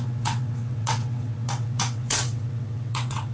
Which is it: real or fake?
fake